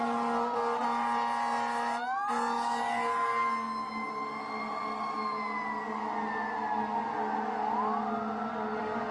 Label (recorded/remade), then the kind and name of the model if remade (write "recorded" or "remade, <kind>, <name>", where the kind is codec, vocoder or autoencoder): recorded